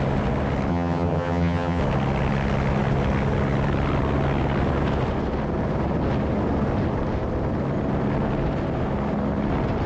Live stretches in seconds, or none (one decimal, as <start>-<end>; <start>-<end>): 0.0-0.7; 1.8-9.9